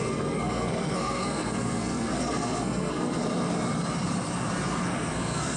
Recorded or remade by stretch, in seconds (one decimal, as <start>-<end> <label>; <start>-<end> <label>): 0.0-3.2 remade; 3.2-4.8 recorded; 4.8-5.6 remade